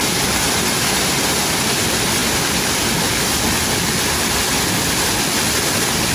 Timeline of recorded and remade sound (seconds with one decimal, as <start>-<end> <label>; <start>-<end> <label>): 0.0-6.1 recorded